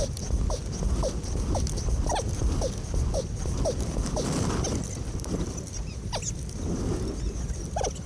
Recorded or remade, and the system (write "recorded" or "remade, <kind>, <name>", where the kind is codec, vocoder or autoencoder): recorded